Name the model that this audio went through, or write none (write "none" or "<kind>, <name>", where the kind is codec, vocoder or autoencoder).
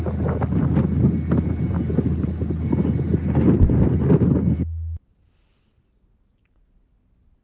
none